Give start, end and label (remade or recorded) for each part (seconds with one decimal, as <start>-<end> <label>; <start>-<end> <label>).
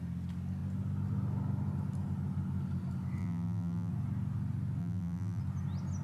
0.0-3.2 recorded; 3.2-3.9 remade; 3.9-4.8 recorded; 4.8-5.4 remade; 5.4-6.0 recorded